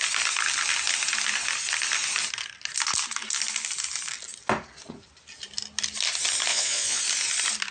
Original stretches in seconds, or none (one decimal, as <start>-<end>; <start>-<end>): 0.0-6.5; 7.0-7.7